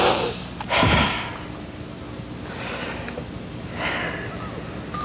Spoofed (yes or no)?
no